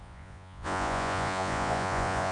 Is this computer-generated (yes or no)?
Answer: yes